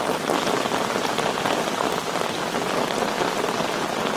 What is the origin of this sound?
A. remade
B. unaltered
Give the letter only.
B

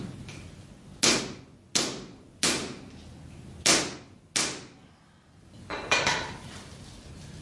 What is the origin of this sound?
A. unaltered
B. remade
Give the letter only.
A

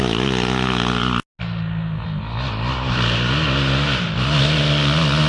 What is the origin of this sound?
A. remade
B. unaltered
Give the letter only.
B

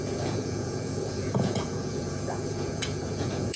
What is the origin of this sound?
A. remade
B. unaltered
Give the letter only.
A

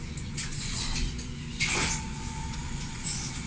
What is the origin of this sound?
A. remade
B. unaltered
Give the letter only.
A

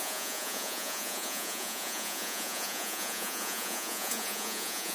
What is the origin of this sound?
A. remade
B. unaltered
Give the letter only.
A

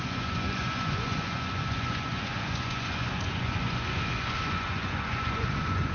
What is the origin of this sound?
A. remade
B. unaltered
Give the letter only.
A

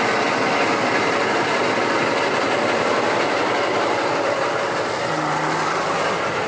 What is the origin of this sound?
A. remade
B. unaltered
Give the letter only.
B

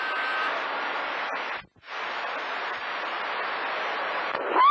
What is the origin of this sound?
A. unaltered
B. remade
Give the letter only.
A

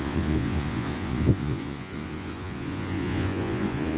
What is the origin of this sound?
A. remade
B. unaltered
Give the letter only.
A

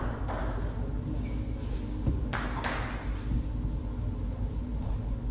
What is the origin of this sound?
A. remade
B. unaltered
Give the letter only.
B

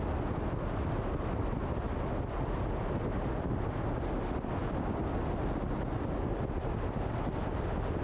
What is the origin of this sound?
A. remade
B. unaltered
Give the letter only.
B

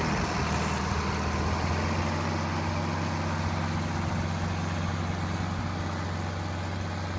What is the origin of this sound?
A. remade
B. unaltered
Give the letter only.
B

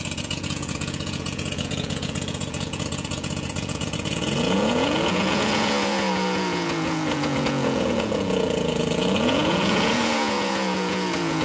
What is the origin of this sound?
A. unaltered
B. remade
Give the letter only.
B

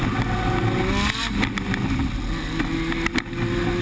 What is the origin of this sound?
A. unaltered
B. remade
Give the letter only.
A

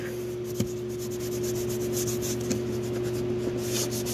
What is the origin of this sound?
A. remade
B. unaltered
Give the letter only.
B